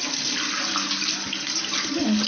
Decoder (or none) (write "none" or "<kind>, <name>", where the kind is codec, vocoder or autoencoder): none